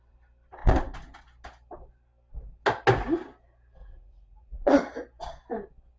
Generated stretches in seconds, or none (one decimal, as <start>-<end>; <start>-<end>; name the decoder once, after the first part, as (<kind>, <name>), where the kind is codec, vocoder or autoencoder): 3.8-4.8 (vocoder, Vocos)